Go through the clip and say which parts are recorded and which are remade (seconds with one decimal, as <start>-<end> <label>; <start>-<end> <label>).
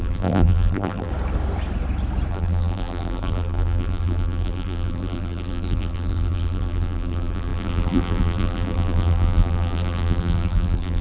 0.0-1.1 remade; 1.1-2.3 recorded; 2.3-11.0 remade